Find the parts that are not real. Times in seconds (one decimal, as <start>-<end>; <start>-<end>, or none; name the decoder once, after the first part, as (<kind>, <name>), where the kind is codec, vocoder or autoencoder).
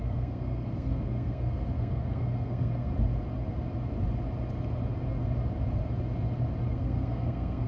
0.0-2.9 (codec, SNAC); 6.7-7.7